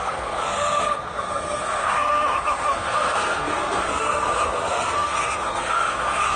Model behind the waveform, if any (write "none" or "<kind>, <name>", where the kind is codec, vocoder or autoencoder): codec, SNAC